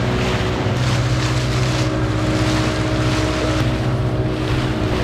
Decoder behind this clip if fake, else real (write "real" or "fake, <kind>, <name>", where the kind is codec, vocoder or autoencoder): real